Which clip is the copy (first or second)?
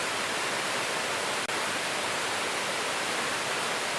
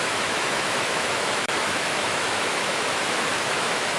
second